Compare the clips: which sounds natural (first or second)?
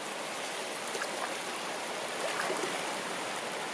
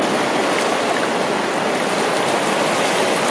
second